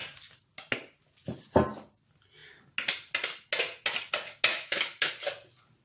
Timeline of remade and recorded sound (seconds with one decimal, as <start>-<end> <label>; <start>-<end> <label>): 0.0-4.5 recorded; 4.5-5.1 remade; 5.1-5.8 recorded